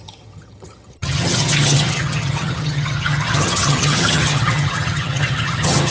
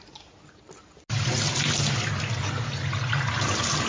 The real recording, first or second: second